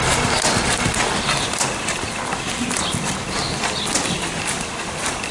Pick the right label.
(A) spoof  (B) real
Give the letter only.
B